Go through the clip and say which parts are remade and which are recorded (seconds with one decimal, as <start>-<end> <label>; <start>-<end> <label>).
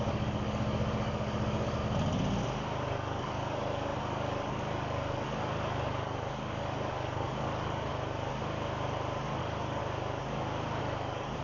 0.0-1.8 remade; 1.8-2.9 recorded; 2.9-7.9 remade; 7.9-9.4 recorded; 9.4-9.8 remade; 9.8-10.8 recorded; 10.8-11.4 remade